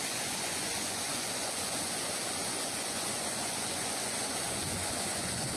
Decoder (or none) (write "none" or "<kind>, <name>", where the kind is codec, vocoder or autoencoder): vocoder, Vocos